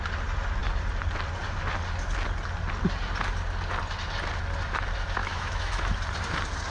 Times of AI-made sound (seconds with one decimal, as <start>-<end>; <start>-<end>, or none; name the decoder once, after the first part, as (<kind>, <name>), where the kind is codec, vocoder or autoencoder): 5.2-5.9 (autoencoder, DAC-VAE)